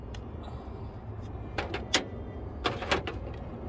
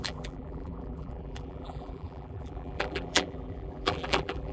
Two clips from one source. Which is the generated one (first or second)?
second